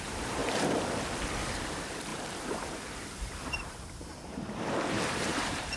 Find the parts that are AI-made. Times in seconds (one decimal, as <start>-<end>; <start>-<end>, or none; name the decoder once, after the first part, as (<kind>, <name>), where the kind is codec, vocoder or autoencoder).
0.0-0.4 (vocoder, BigVGAN v2); 1.7-5.8